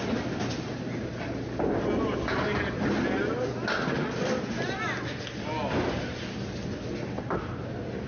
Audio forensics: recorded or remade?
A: recorded